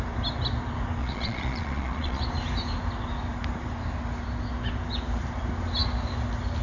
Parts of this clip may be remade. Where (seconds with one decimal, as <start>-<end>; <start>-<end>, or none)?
1.0-2.2